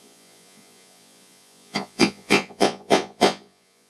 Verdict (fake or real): fake